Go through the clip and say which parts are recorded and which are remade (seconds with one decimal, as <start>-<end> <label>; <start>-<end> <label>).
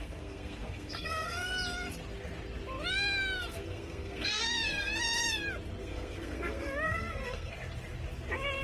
0.0-1.5 remade; 1.5-3.4 recorded; 3.4-4.9 remade; 4.9-5.8 recorded; 5.8-7.5 remade; 7.5-8.6 recorded